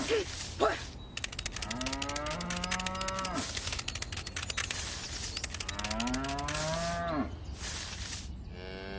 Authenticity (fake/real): real